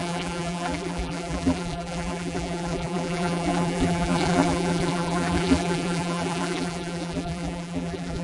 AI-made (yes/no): yes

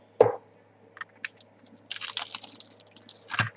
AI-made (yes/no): no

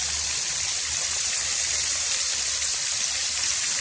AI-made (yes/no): yes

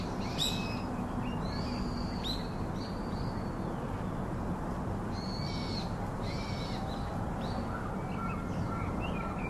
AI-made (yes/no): no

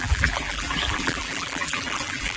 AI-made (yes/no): yes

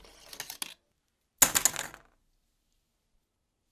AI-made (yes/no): no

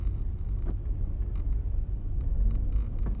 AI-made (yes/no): no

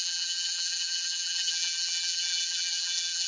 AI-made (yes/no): yes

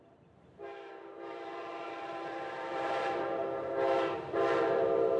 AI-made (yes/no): yes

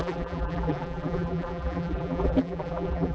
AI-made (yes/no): yes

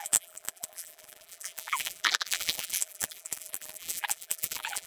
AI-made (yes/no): yes